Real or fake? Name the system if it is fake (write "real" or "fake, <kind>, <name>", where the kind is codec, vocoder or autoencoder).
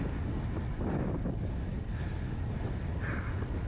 real